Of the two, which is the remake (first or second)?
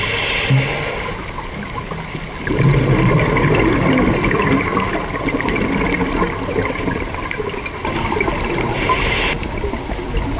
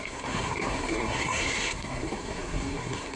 second